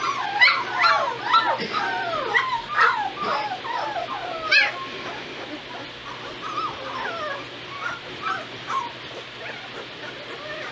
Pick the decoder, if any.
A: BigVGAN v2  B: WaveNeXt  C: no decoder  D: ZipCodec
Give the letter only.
C